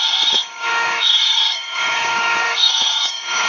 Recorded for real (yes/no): no